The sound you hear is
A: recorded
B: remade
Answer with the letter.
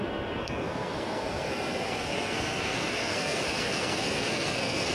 B